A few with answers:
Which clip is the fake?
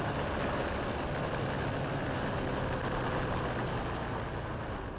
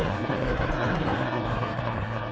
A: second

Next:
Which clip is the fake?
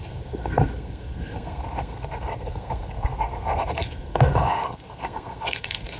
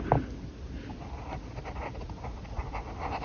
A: first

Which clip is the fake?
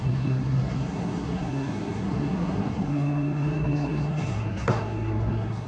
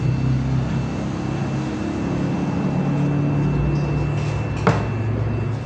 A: first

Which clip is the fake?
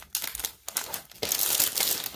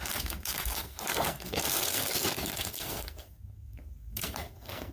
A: second